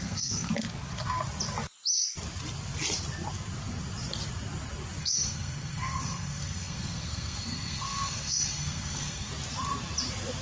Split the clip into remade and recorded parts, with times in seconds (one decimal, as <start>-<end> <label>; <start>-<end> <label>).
0.0-0.5 remade; 0.5-5.0 recorded; 5.0-9.3 remade; 9.3-10.4 recorded